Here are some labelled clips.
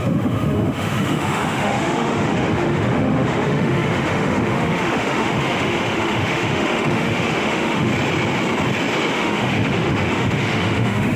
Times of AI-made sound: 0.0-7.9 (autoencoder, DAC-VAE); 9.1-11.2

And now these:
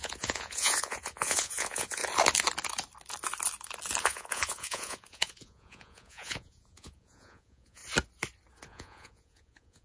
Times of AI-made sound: 0.0-2.0 (vocoder, Vocos); 4.0-7.8; 8.7-9.8

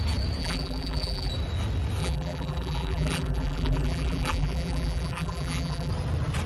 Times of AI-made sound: 0.4-1.3 (vocoder, BigVGAN v2); 2.0-5.9

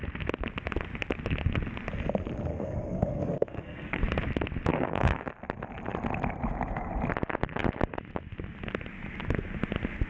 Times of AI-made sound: 2.5-4.0 (codec, SNAC); 4.7-5.2

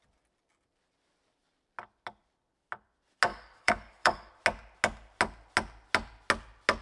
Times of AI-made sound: 3.3-4.3 (codec, DAC)

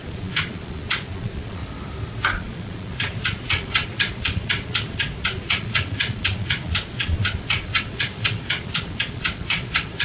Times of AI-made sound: 0.0-1.6 (vocoder, Vocos); 2.2-10.0